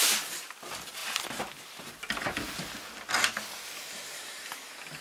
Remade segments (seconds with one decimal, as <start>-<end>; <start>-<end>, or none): 0.0-5.0